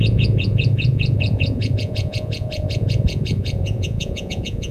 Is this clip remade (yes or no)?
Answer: yes